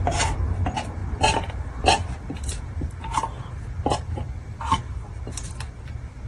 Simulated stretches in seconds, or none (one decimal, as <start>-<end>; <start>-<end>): 1.0-4.8